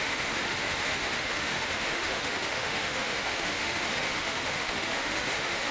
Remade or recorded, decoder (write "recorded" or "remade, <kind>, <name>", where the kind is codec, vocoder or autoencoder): remade, autoencoder, DAC-VAE